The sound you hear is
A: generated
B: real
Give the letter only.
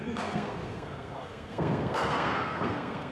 A